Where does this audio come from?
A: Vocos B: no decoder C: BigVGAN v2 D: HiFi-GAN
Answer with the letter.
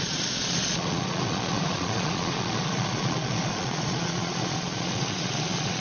A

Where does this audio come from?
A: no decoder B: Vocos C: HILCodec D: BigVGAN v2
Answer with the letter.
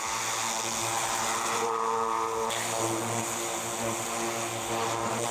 A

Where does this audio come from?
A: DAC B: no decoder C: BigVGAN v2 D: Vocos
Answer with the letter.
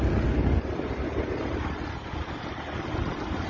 B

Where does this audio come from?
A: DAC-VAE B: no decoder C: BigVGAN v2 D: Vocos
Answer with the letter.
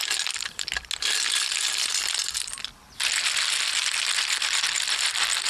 B